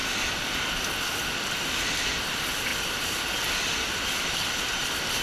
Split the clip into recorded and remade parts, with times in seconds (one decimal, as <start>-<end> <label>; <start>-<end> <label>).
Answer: 0.0-2.7 recorded; 2.7-4.0 remade; 4.0-5.2 recorded